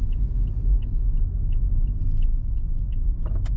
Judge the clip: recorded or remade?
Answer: recorded